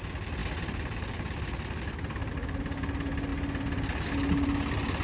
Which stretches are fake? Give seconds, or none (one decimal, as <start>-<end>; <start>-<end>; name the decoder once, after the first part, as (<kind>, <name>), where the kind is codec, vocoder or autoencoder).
none

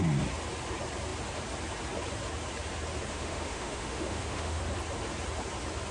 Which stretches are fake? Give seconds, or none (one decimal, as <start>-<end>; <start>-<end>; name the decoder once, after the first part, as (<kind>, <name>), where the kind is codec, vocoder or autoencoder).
3.1-4.6 (autoencoder, DAC-VAE)

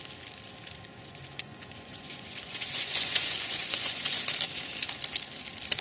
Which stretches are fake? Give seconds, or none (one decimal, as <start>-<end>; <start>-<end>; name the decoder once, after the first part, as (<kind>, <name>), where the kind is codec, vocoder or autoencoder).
0.9-4.2 (vocoder, Vocos)

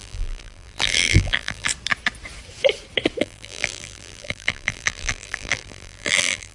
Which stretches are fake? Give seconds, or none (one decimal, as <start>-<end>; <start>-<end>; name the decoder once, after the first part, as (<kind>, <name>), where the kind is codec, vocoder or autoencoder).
0.0-1.7 (vocoder, BigVGAN v2); 3.2-6.5